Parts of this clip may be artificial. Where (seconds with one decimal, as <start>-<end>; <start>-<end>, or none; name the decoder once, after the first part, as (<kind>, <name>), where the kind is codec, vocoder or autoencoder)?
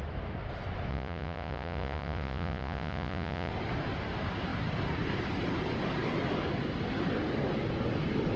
0.9-3.5 (vocoder, Vocos)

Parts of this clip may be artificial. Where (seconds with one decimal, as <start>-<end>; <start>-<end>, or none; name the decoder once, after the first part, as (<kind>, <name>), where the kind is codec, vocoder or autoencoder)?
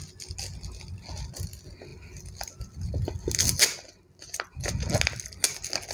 none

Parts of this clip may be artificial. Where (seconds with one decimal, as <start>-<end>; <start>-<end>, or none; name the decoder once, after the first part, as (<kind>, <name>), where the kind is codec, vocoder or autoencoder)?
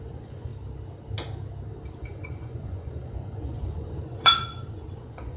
0.0-0.5 (vocoder, Vocos); 2.0-5.4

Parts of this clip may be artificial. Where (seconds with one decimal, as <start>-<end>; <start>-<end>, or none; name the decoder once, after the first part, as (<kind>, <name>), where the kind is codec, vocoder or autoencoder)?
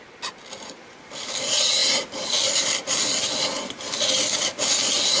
none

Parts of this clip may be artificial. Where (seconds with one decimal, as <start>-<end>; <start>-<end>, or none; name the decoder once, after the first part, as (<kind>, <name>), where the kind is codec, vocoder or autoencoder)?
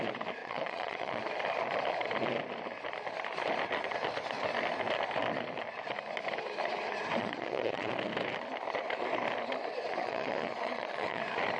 0.4-1.2 (vocoder, Vocos); 7.2-7.9; 10.0-11.2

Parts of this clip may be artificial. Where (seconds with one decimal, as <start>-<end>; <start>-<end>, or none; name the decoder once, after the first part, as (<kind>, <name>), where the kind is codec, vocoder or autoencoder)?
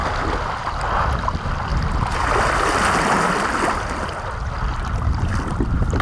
none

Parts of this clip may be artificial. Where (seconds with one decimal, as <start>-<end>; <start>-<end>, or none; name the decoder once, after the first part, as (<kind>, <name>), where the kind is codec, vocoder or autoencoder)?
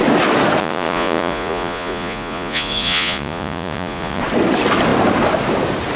0.6-4.2 (vocoder, Vocos)